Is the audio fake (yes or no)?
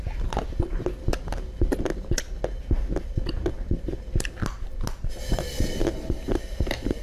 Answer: no